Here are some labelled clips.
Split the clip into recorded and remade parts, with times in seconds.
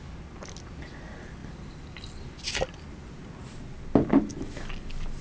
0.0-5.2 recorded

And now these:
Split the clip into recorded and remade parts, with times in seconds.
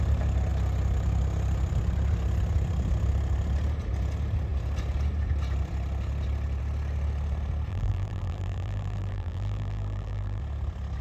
0.0-7.7 recorded; 7.7-10.4 remade; 10.4-11.0 recorded